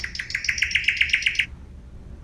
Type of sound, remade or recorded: recorded